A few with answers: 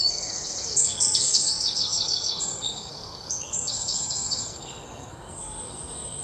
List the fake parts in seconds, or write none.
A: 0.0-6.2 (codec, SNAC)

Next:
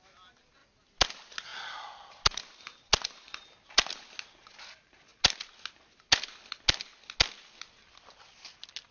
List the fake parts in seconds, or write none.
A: none

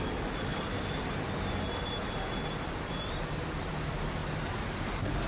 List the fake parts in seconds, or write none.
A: none

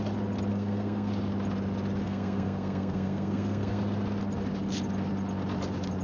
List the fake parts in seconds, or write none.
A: 0.5-1.1 (codec, SNAC); 2.0-3.8

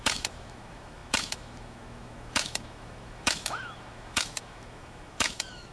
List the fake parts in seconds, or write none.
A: 0.0-5.7 (autoencoder, DAC-VAE)

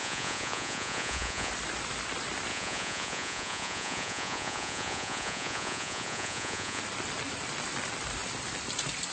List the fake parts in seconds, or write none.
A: 0.0-1.5 (vocoder, Vocos); 2.5-6.8

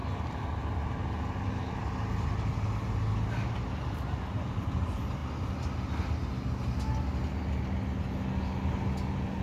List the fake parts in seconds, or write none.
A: none

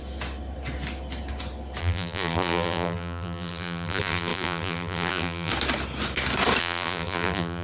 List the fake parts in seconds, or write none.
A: 1.8-5.5 (vocoder, BigVGAN v2); 6.6-7.6